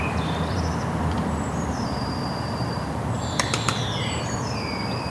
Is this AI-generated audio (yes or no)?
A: yes